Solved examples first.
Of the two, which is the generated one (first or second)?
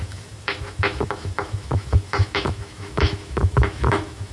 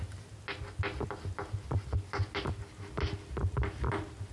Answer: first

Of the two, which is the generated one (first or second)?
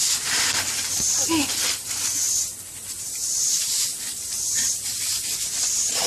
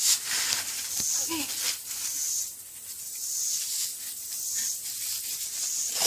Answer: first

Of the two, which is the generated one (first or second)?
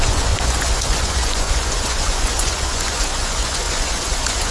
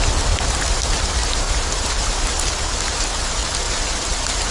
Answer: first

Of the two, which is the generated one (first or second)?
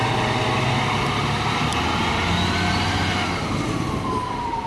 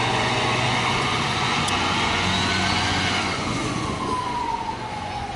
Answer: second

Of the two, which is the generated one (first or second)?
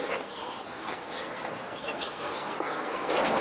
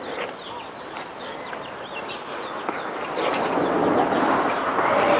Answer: first